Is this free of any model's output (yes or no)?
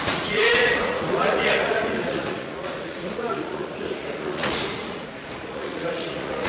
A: no